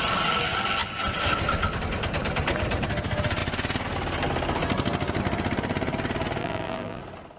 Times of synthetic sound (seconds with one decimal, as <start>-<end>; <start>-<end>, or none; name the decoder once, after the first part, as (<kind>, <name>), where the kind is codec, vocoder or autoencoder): 6.4-7.0 (vocoder, BigVGAN v2)